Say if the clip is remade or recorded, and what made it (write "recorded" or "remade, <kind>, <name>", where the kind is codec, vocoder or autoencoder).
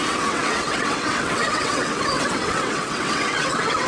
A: remade, vocoder, WaveNeXt